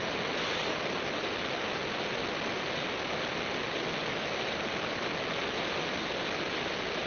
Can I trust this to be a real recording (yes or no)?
yes